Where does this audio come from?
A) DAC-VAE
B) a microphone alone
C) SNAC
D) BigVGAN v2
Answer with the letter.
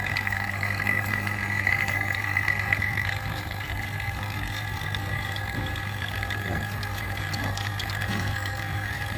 C